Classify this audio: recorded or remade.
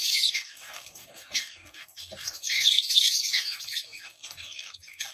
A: remade